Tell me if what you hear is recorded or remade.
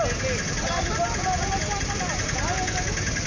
recorded